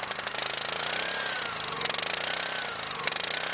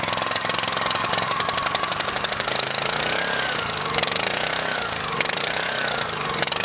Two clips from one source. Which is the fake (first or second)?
second